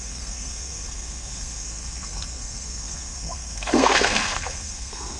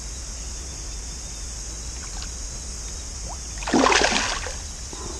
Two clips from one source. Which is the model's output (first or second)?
first